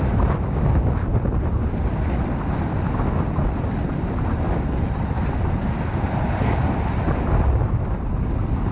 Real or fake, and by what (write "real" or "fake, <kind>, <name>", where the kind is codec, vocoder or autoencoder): real